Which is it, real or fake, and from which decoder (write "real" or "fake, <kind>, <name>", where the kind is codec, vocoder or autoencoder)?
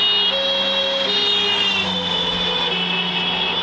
real